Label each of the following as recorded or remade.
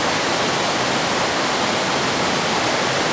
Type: recorded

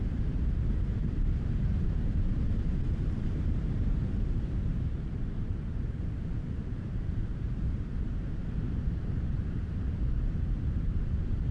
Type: remade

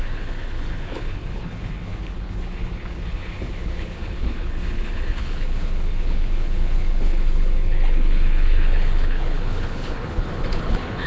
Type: remade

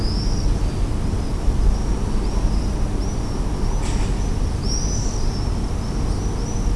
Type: recorded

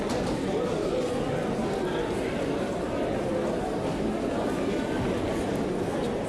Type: recorded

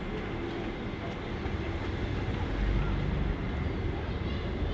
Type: recorded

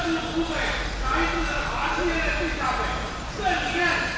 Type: recorded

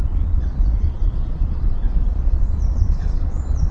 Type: remade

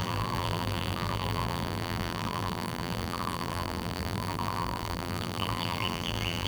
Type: remade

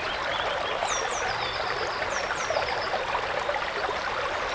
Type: recorded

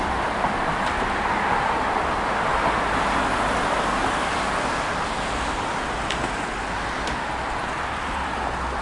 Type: recorded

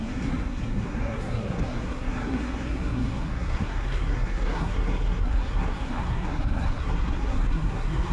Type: remade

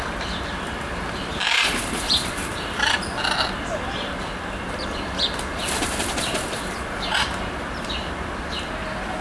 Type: remade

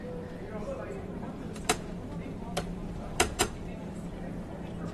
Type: remade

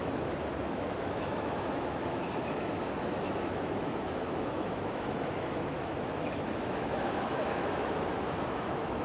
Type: remade